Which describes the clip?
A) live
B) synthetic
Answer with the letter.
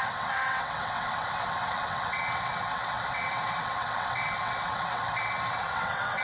B